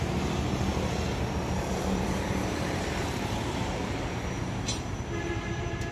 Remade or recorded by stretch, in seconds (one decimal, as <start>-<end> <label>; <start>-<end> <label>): 0.0-0.7 remade; 0.7-1.7 recorded; 1.7-5.9 remade